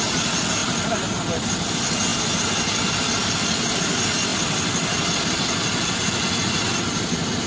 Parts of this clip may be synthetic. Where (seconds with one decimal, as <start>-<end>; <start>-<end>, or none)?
none